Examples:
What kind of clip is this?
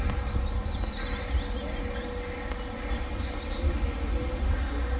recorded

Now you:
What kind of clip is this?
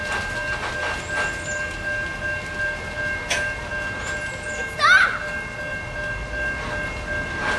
recorded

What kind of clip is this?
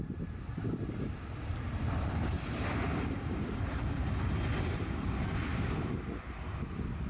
recorded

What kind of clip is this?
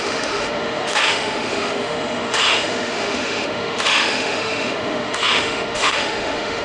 remade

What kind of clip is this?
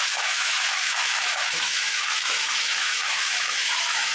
remade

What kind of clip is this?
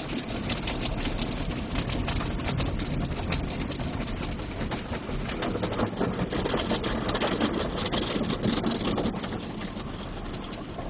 recorded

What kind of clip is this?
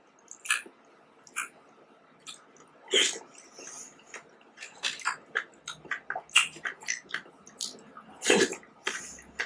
recorded